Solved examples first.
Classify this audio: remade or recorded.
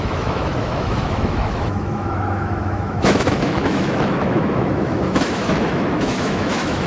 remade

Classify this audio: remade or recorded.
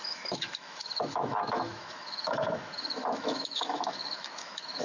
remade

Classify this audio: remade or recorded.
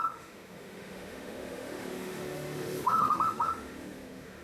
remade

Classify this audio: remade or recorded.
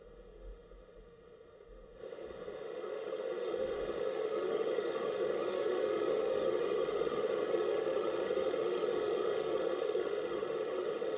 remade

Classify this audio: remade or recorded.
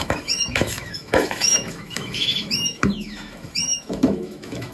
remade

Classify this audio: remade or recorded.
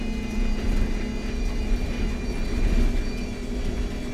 recorded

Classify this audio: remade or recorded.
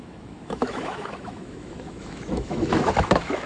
remade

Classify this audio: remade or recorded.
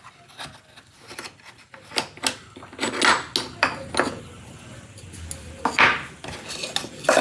recorded